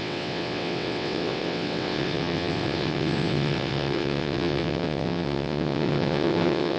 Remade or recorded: remade